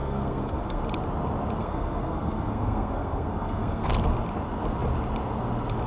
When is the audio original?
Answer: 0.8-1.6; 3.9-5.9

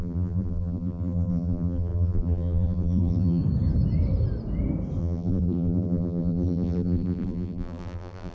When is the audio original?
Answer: 3.4-5.0

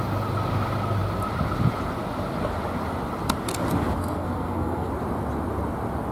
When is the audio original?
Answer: 0.0-4.0; 4.9-6.1

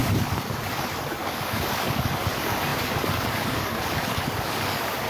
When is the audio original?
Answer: none

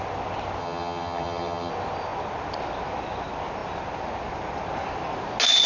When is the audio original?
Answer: 0.0-0.6; 1.7-5.7

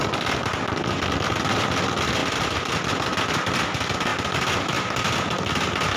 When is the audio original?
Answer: 0.0-2.2; 2.8-6.0

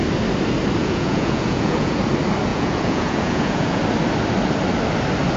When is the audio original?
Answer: 0.0-0.8; 2.0-2.5; 3.8-5.4